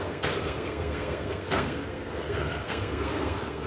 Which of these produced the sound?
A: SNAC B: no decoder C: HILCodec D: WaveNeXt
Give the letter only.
A